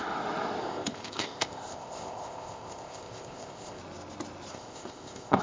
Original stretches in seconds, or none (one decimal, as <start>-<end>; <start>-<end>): 0.0-0.6; 3.8-4.5